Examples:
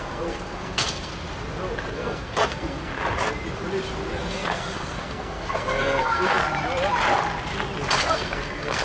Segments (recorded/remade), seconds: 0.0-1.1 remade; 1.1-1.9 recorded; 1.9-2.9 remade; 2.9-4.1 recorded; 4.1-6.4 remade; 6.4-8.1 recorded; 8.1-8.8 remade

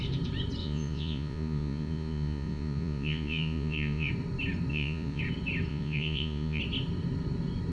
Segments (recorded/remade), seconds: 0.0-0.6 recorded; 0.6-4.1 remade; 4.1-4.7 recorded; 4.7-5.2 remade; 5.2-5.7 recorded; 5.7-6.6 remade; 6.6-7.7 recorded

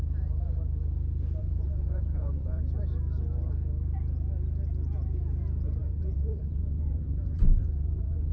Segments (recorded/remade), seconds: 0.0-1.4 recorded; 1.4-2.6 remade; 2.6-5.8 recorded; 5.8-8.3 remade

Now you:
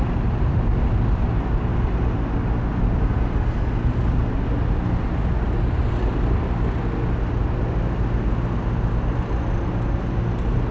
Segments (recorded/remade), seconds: 0.0-10.7 recorded

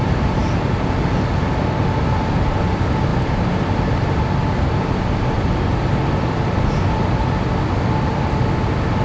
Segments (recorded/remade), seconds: 0.0-9.0 recorded

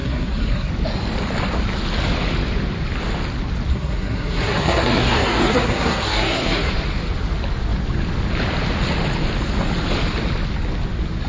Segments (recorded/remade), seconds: 0.0-0.7 remade; 0.7-3.7 recorded; 3.7-6.7 remade; 6.7-11.3 recorded